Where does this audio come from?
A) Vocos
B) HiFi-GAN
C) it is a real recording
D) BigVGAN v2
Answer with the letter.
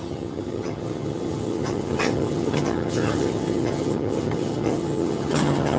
B